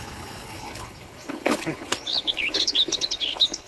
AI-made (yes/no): yes